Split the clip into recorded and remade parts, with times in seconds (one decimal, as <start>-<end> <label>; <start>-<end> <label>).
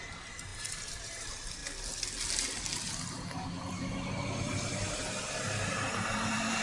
0.0-1.6 remade; 1.6-3.1 recorded; 3.1-6.6 remade